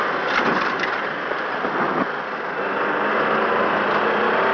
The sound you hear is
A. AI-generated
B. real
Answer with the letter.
B